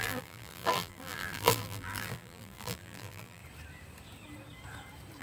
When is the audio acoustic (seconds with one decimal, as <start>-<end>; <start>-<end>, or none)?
3.4-5.2

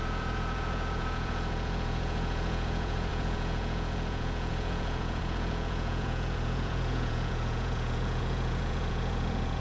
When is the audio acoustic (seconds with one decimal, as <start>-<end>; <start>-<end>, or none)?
none

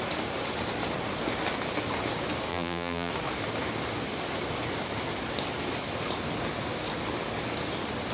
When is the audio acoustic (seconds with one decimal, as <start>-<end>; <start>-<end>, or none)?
0.0-2.5; 3.1-8.1

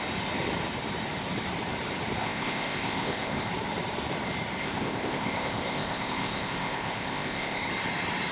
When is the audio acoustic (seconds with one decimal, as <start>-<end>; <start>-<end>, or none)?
0.0-2.2; 3.5-4.6; 7.7-8.3

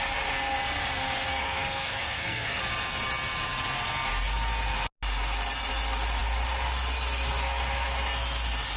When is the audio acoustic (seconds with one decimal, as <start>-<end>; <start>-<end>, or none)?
0.0-1.4; 2.6-8.8

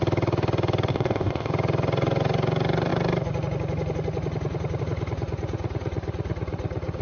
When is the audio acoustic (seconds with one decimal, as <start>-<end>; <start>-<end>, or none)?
0.0-0.9; 1.5-7.0

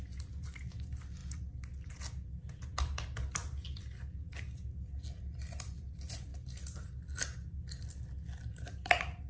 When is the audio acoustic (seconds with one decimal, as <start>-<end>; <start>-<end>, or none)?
0.0-9.3